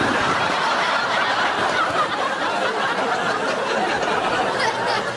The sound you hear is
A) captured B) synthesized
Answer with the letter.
A